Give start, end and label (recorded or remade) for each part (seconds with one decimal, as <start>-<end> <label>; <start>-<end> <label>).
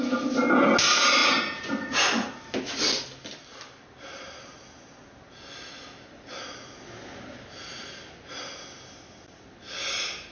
0.0-10.3 recorded